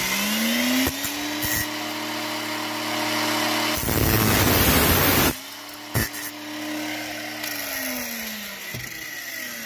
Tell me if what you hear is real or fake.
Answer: real